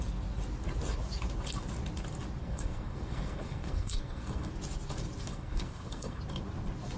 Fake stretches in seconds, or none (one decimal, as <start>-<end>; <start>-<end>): 2.4-4.5; 5.3-6.2